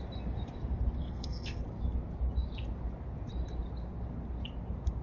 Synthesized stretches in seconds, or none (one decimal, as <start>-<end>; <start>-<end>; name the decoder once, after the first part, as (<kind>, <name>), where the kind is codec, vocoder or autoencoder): 1.0-1.6 (codec, SNAC)